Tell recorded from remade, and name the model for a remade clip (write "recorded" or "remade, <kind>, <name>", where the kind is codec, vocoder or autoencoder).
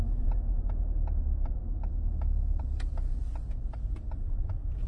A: recorded